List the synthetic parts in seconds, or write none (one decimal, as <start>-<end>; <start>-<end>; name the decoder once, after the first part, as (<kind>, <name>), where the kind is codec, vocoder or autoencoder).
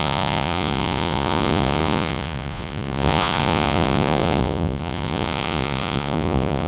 0.0-6.7 (vocoder, Vocos)